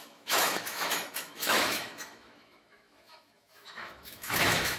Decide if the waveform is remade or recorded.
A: remade